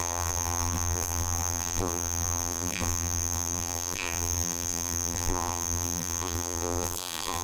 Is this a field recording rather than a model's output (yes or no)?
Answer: no